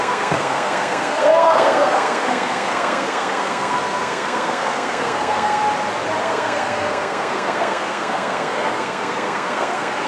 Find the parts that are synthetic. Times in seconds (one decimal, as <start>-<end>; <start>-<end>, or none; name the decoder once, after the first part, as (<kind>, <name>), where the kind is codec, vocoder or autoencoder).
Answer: 0.0-5.6 (codec, SNAC); 6.2-10.1